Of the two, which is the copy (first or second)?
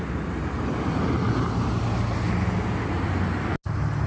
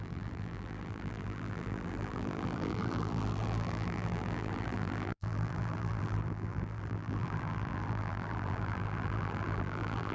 second